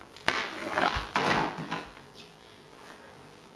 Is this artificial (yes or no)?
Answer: yes